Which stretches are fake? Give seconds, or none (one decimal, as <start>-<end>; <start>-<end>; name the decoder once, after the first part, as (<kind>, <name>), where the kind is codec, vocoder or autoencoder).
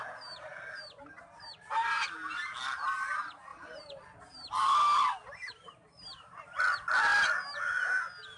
none